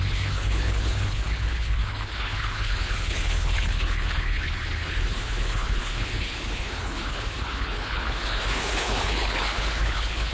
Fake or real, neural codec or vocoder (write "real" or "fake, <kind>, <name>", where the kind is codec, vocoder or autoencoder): fake, codec, HILCodec